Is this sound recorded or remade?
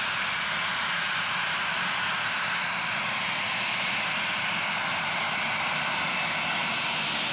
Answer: recorded